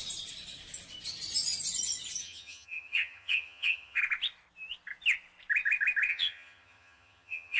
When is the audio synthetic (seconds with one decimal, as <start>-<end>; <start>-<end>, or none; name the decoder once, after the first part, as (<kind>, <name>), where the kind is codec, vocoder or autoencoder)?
2.2-4.0 (vocoder, HiFi-GAN); 6.1-7.6